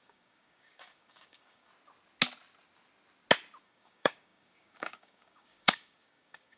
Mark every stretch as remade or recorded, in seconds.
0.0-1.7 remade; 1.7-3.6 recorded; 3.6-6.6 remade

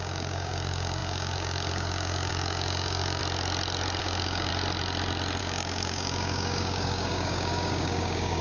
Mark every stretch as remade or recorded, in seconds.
0.0-3.2 remade; 3.2-4.0 recorded; 4.0-4.5 remade; 4.5-5.4 recorded; 5.4-8.4 remade